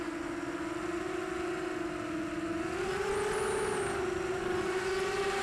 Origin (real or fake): real